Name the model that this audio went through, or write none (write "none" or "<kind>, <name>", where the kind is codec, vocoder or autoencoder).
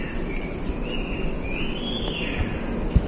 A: none